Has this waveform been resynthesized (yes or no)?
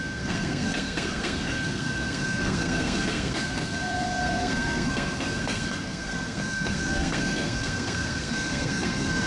yes